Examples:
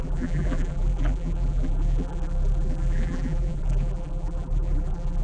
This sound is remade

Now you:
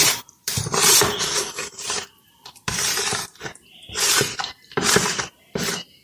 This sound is remade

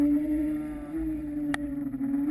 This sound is remade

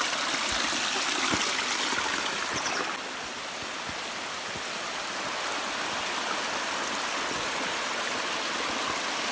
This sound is recorded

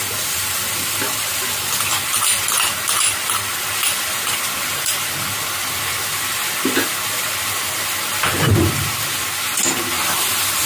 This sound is recorded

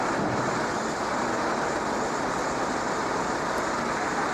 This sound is recorded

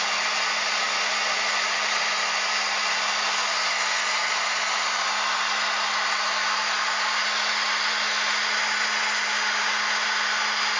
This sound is recorded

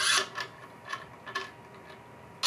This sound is recorded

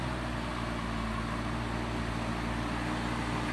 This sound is recorded